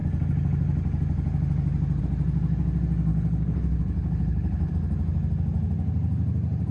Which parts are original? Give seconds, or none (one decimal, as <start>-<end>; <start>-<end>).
0.0-3.1; 4.7-6.7